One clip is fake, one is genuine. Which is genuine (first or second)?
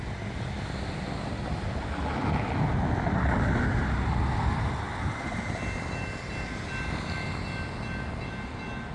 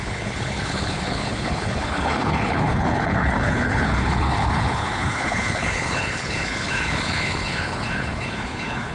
first